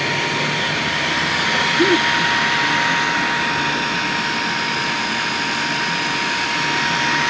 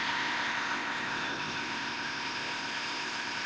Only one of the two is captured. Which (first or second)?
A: first